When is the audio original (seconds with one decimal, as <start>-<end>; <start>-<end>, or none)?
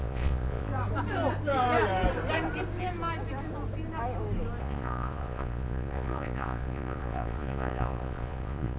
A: 0.7-4.6